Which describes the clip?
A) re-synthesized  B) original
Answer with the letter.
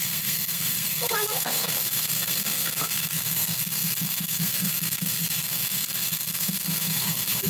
A